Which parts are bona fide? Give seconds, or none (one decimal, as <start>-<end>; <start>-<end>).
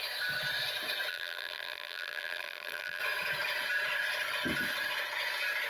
0.0-1.1; 3.0-5.7